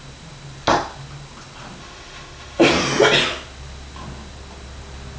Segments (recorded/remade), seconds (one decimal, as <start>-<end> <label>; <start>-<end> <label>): 0.0-1.8 recorded; 1.8-2.7 remade; 2.7-5.2 recorded